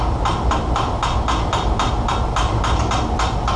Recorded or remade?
recorded